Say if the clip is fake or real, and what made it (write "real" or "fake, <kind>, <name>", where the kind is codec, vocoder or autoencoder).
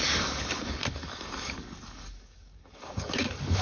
fake, codec, DAC